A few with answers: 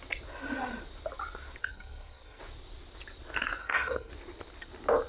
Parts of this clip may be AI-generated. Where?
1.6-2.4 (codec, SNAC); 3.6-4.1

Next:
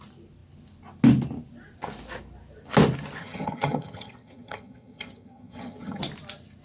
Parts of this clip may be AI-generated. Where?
3.2-6.0 (vocoder, HiFi-GAN)

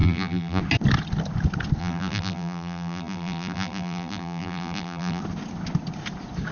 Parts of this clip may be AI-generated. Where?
0.0-0.6 (vocoder, BigVGAN v2); 1.8-5.2